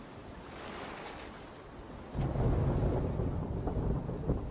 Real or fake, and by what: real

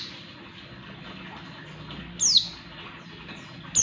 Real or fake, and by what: real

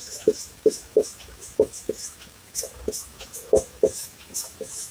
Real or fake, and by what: fake, autoencoder, DAC-VAE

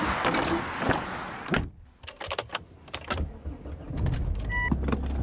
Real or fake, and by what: real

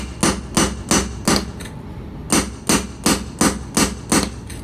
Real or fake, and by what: real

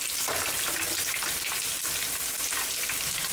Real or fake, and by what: real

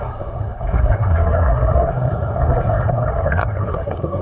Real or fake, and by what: fake, codec, SNAC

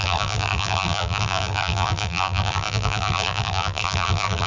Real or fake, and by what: fake, vocoder, BigVGAN v2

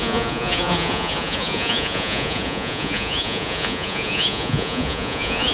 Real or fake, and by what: fake, vocoder, Vocos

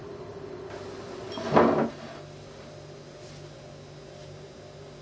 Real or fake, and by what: real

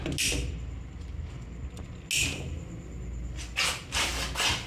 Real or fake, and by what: real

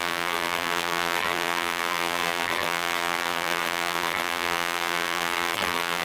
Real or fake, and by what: fake, vocoder, BigVGAN v2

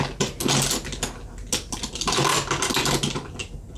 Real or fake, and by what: real